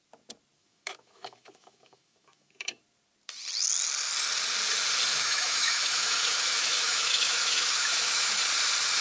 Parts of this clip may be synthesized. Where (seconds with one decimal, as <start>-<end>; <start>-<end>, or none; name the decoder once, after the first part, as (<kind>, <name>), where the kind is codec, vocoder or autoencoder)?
0.6-2.8 (autoencoder, DAC-VAE); 5.1-8.4